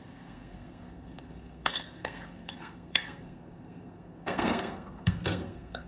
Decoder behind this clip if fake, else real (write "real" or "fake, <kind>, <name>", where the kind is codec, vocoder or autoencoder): fake, codec, SNAC